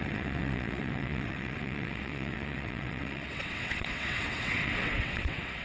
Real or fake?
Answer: fake